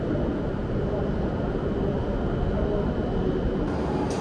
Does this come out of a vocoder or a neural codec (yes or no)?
no